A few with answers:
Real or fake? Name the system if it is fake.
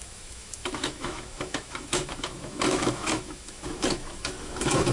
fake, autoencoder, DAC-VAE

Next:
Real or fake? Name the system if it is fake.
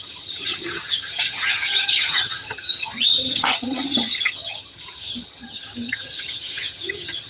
fake, vocoder, HiFi-GAN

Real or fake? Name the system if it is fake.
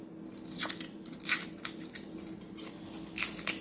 real